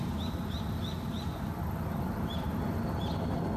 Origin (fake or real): real